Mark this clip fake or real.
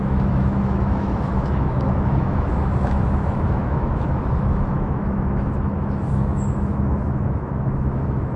fake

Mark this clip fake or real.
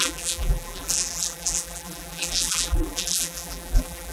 fake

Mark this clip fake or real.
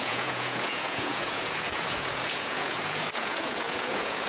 fake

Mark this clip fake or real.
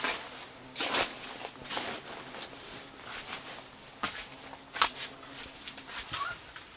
real